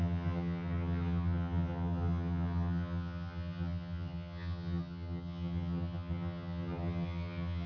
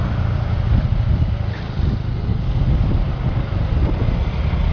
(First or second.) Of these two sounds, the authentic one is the second